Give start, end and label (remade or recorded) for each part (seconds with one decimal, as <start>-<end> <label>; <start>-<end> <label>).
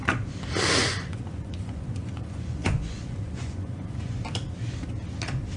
0.0-0.8 recorded; 0.8-4.2 remade; 4.2-5.6 recorded